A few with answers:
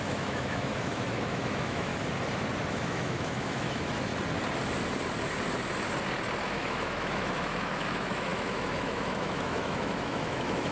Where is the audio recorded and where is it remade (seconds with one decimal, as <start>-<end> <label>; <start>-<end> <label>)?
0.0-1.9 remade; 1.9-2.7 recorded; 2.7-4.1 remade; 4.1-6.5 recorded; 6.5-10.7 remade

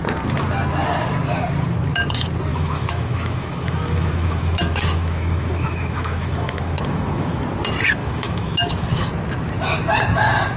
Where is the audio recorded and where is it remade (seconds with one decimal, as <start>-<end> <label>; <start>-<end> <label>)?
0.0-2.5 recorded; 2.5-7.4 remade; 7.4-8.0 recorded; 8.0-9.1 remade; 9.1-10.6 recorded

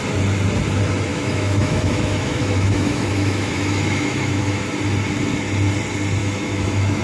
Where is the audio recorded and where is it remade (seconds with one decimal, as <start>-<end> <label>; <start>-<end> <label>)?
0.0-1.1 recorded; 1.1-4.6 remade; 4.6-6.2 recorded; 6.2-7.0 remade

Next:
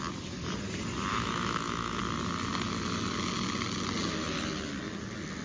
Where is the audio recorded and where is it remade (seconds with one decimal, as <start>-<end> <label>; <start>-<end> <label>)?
0.0-1.1 recorded; 1.1-2.0 remade; 2.0-5.4 recorded